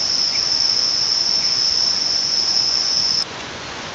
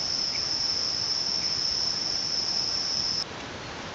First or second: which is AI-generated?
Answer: first